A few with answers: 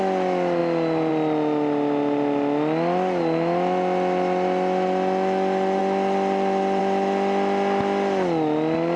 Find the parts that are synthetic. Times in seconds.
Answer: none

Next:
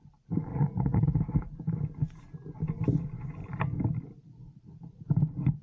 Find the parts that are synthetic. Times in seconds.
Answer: 0.5-1.2 (vocoder, Vocos)

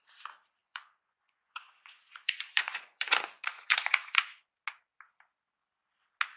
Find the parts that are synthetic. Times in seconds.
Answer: 0.6-4.4 (vocoder, Vocos)

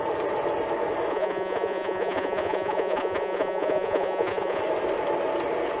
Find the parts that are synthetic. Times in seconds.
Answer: 1.1-4.6 (vocoder, Vocos)

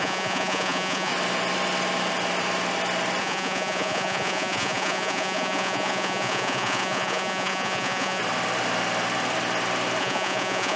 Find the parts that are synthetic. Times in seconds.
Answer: 0.0-1.1 (vocoder, Vocos); 3.2-8.2; 10.0-10.8